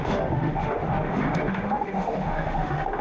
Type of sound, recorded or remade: remade